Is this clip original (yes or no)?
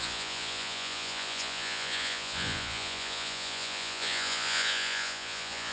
no